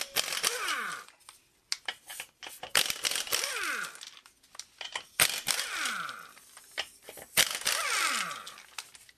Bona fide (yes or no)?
yes